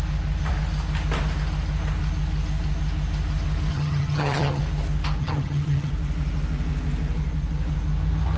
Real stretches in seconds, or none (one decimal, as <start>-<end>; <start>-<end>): 0.0-3.7; 4.6-5.2; 5.9-8.4